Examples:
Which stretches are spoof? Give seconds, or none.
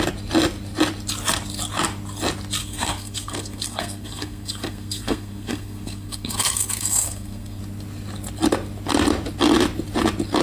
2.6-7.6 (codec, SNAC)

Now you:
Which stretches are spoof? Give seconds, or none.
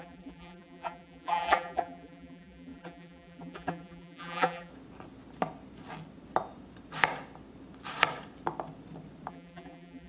0.0-4.7 (vocoder, BigVGAN v2); 9.3-10.1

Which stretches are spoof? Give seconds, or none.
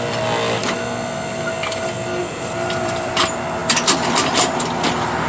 2.2-3.1 (vocoder, BigVGAN v2)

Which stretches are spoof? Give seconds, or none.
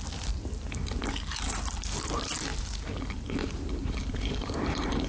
3.4-5.1 (vocoder, BigVGAN v2)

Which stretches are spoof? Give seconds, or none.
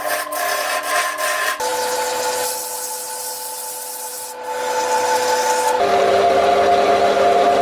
5.9-6.4 (vocoder, BigVGAN v2)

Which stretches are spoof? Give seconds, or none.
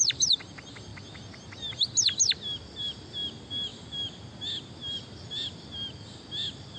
none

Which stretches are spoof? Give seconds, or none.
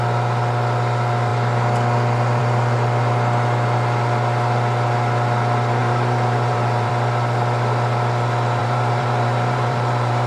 5.8-6.9 (vocoder, BigVGAN v2); 8.6-10.3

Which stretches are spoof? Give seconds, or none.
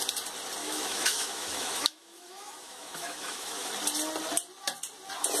0.6-3.7 (autoencoder, DAC-VAE)